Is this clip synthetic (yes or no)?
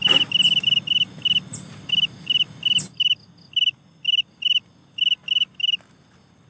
no